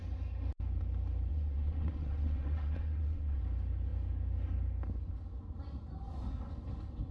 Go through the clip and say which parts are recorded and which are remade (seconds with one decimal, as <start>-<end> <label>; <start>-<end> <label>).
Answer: 0.0-1.3 recorded; 1.3-3.4 remade; 3.4-7.1 recorded